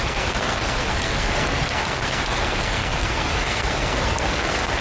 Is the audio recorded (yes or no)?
no